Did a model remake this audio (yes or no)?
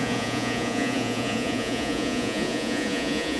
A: yes